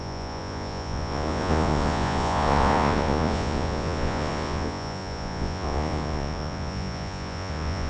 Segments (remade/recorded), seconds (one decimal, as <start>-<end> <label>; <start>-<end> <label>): 0.0-7.9 remade